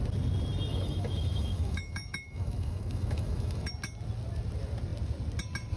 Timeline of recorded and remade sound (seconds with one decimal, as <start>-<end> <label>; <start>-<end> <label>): 0.0-0.7 recorded; 0.7-3.7 remade; 3.7-5.8 recorded